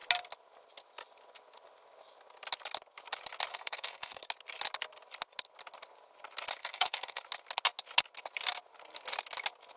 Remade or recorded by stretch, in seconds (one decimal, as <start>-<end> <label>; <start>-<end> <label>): 0.0-3.5 recorded; 3.5-4.2 remade; 4.2-6.6 recorded; 6.6-7.2 remade; 7.2-9.8 recorded